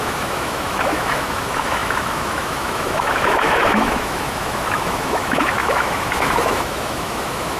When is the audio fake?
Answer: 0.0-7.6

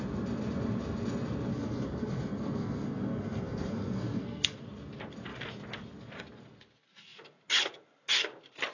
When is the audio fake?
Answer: 1.5-4.6

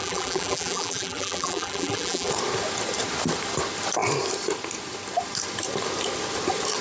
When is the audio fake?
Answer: 0.0-2.3

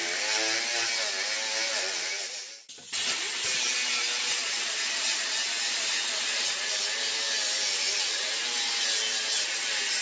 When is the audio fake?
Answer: none

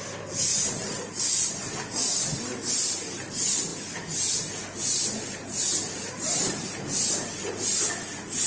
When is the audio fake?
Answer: 0.5-1.2; 5.8-6.4

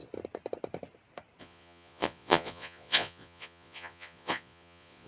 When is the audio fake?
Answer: 1.4-5.1

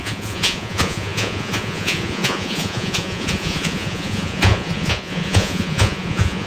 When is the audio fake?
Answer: 0.0-6.5

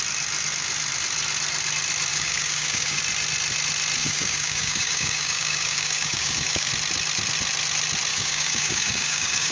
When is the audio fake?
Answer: 2.1-3.0; 4.0-6.7; 8.1-9.5